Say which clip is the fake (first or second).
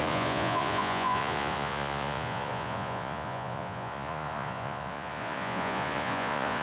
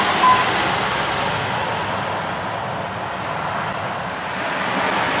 first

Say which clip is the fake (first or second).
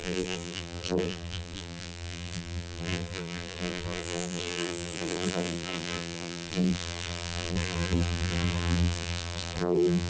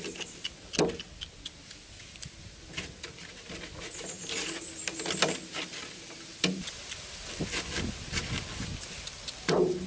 first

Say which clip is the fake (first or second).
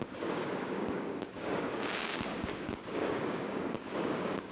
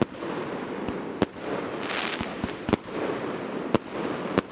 first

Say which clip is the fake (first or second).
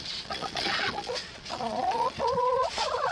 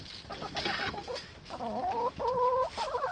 first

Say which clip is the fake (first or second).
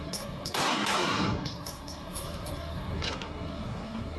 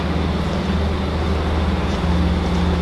first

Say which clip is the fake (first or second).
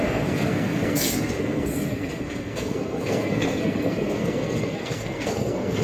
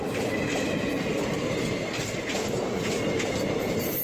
first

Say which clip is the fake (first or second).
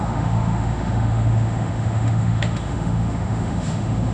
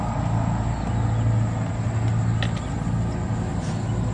first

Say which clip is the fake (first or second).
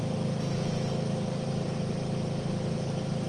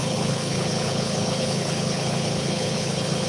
second